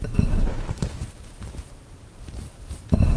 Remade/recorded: remade